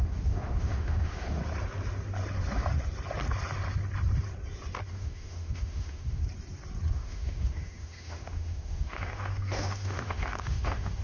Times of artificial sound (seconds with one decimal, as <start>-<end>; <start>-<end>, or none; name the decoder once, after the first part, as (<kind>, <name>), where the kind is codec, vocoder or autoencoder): 0.0-1.4 (autoencoder, DAC-VAE); 4.9-6.2; 6.9-11.0